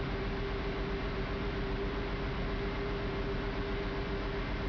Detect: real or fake real